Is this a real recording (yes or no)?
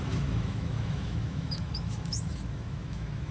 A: no